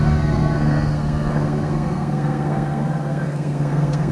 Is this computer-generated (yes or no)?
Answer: yes